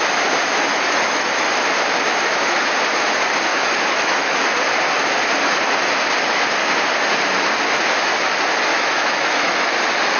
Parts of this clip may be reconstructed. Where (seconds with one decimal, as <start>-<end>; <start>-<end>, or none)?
0.7-1.5; 3.5-4.4; 8.7-9.7